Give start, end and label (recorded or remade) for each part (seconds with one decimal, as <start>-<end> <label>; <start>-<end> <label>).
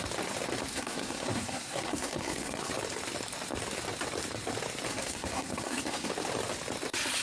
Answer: 0.0-0.7 recorded; 0.7-2.7 remade; 2.7-4.9 recorded; 4.9-6.1 remade; 6.1-7.2 recorded